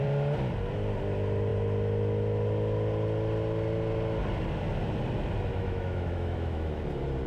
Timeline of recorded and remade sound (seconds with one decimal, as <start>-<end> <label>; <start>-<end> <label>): 0.0-5.5 recorded; 5.5-6.8 remade; 6.8-7.3 recorded